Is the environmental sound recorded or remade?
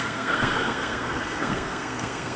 remade